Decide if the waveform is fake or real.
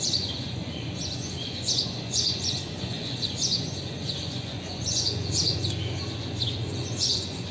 fake